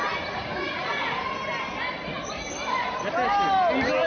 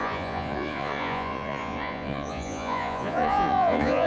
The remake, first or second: second